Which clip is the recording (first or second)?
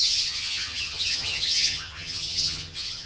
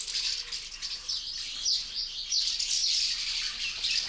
second